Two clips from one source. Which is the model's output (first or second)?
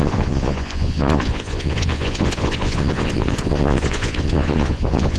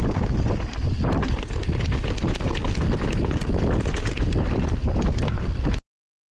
first